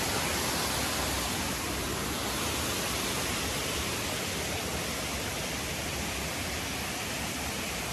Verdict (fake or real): real